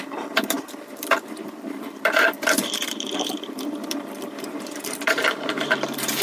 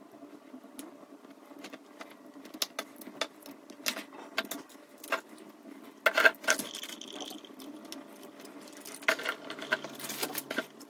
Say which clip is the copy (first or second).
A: first